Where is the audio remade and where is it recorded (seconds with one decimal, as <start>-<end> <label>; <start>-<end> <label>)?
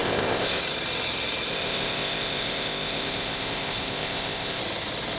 0.0-0.6 remade; 0.6-1.5 recorded; 1.5-4.6 remade; 4.6-5.2 recorded